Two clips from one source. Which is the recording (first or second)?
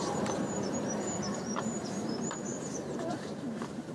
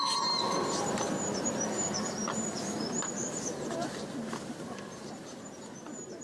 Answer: second